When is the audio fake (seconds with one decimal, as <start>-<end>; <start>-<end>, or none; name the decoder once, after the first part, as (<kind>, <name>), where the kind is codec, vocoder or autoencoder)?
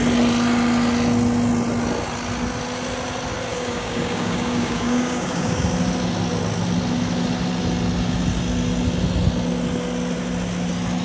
3.5-5.6 (codec, DAC)